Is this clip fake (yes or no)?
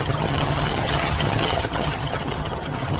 yes